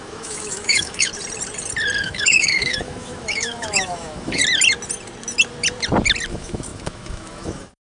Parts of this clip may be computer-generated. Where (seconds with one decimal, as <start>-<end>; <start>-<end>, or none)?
0.0-1.1; 2.0-4.4; 6.3-7.9